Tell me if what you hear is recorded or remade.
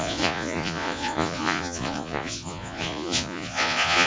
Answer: remade